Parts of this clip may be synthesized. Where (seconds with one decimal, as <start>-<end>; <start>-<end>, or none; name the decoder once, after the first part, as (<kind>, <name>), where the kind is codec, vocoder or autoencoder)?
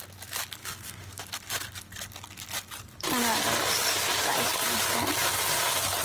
0.6-1.2 (codec, SNAC)